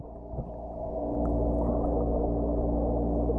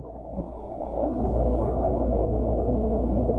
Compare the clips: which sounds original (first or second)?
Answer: first